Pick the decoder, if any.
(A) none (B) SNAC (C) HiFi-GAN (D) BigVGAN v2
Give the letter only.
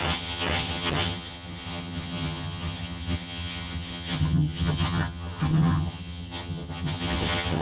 C